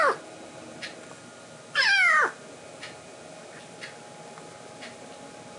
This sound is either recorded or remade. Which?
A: recorded